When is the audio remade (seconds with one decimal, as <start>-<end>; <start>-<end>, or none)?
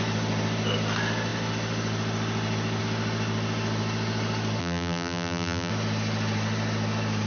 4.6-5.7